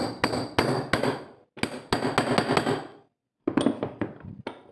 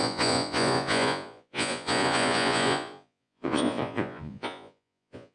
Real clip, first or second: first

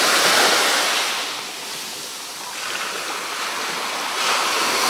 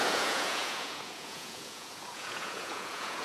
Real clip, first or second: first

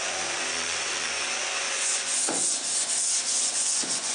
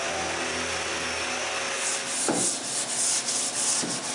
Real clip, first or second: second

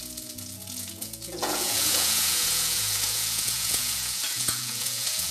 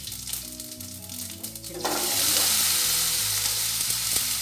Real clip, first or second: second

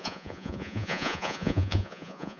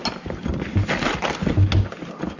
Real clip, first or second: second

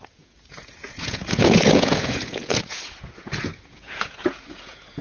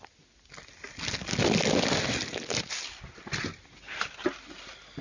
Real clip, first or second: second